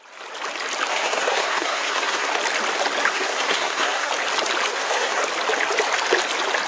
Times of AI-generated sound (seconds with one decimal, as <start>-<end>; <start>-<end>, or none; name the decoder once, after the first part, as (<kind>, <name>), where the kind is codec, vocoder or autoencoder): 0.9-2.3 (codec, SNAC); 3.1-4.1; 4.7-5.2